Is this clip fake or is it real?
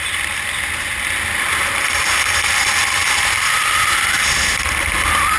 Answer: real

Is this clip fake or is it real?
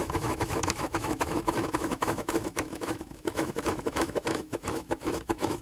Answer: fake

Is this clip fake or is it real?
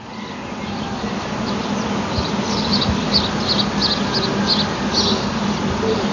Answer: real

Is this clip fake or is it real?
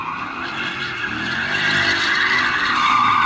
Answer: real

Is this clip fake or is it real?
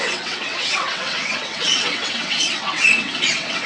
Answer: fake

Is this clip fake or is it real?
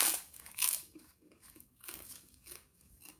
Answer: fake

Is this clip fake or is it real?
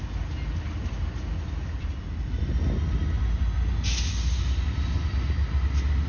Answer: real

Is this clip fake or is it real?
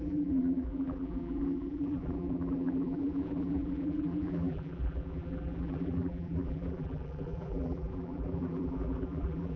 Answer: fake